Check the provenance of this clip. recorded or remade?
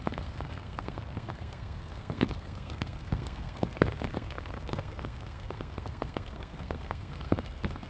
remade